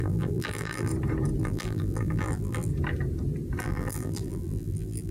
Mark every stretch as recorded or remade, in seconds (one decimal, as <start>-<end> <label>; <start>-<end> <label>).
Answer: 0.0-0.9 remade; 0.9-1.4 recorded; 1.4-2.7 remade; 2.7-3.6 recorded; 3.6-5.1 remade